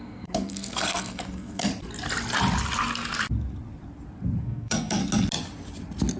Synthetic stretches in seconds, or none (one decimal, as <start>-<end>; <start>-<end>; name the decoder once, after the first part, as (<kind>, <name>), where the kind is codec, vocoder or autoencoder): 0.0-1.7 (codec, SNAC); 4.4-5.0